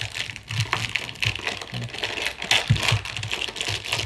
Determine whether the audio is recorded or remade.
recorded